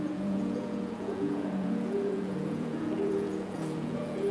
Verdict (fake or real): fake